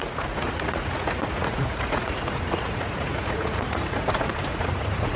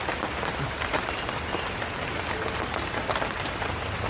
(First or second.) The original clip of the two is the second